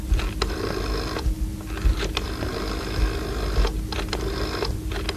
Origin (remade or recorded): recorded